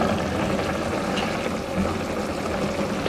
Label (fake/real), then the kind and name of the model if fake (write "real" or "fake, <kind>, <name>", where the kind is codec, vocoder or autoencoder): real